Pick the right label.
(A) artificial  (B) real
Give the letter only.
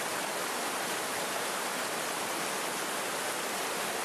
A